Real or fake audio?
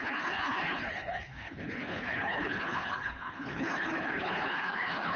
fake